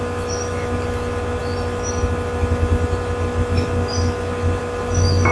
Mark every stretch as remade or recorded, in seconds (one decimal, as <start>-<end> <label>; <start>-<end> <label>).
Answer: 0.0-5.3 recorded